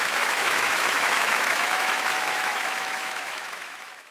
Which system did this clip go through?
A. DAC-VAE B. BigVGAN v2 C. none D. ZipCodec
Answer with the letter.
A